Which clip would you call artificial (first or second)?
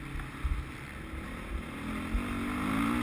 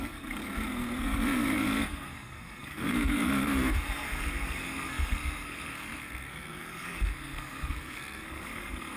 second